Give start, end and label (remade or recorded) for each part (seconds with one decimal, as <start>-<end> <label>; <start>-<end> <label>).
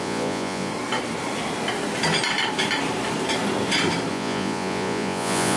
0.0-0.7 remade; 0.7-4.1 recorded; 4.1-5.6 remade